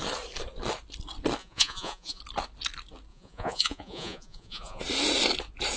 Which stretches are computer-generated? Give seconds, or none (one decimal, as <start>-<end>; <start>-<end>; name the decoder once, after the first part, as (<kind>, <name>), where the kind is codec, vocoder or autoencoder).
1.4-2.2 (vocoder, Vocos); 3.1-4.8